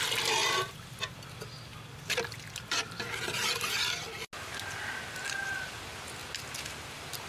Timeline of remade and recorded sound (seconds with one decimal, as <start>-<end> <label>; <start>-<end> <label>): 0.0-0.4 recorded; 0.4-1.2 remade; 1.2-7.3 recorded